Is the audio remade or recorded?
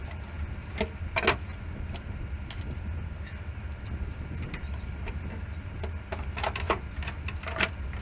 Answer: recorded